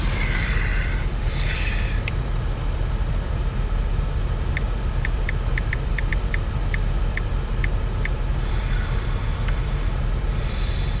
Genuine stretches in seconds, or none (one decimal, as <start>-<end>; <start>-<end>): none